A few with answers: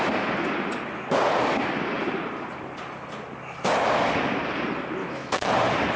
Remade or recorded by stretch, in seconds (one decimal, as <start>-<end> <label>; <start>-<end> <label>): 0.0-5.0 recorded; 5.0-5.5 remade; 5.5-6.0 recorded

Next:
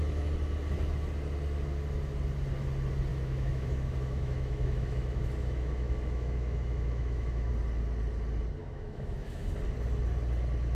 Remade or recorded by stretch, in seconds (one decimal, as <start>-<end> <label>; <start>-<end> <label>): 0.0-3.1 recorded; 3.1-7.5 remade; 7.5-8.6 recorded; 8.6-9.5 remade; 9.5-10.7 recorded

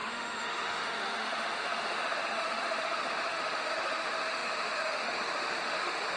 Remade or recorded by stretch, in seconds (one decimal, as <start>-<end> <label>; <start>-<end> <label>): 0.0-6.2 remade

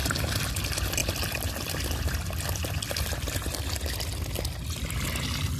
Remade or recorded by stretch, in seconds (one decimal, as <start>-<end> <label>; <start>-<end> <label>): 0.0-5.6 recorded

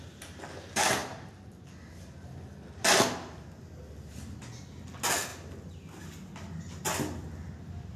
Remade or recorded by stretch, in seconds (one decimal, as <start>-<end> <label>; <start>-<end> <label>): 0.0-8.0 recorded